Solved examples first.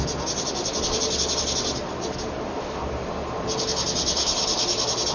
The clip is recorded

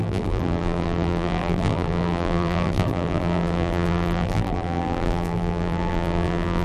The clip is remade